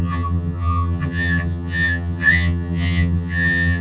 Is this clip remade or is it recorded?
remade